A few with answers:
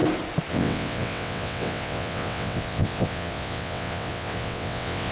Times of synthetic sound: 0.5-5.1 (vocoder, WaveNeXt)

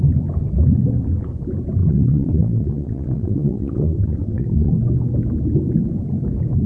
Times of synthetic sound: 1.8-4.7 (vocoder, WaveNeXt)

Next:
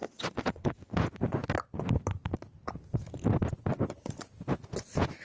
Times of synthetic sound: 0.0-0.9 (vocoder, WaveNeXt)

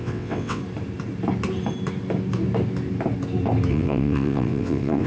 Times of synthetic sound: 0.0-0.6 (vocoder, WaveNeXt); 3.7-5.1